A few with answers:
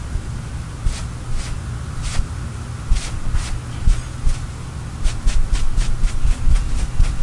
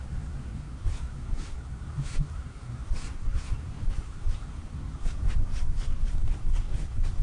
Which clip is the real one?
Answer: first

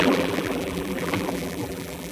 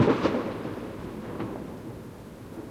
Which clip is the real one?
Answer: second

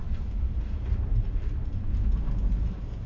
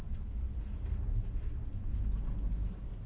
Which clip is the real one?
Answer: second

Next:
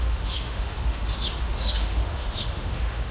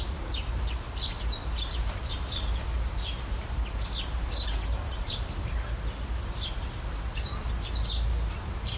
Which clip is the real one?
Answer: second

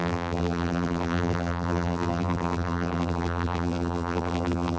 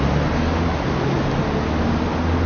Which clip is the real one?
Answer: second